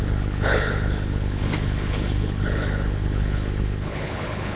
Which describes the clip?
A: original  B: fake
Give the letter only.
B